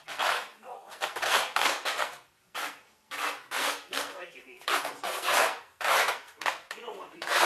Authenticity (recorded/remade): remade